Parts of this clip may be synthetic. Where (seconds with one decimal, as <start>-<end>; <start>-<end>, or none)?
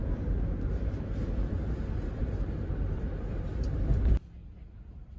0.0-1.3; 2.2-3.5